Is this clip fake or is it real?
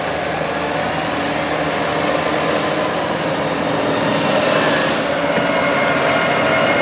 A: real